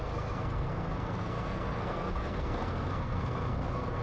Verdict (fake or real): fake